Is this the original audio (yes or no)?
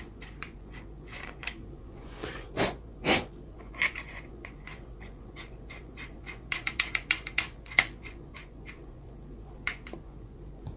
no